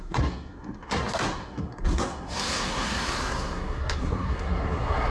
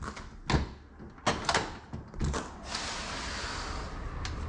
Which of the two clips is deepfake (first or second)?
first